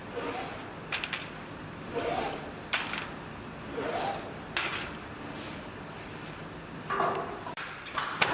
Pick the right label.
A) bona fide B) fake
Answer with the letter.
B